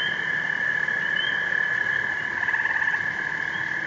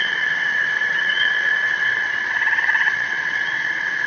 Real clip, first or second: first